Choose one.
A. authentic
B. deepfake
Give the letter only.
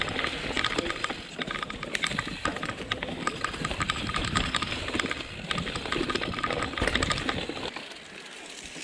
A